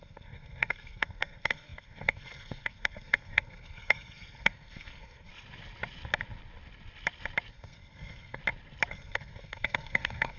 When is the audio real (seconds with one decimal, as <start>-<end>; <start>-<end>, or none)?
5.3-7.5; 8.4-8.9